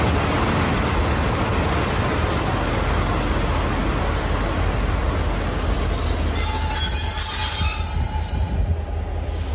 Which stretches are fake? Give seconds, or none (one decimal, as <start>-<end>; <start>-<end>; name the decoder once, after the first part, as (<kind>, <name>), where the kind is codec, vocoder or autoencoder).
none